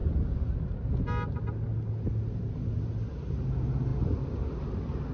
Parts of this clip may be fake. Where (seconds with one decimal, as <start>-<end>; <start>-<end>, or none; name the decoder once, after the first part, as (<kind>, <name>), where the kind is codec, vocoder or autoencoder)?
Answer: none